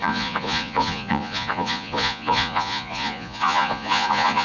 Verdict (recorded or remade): remade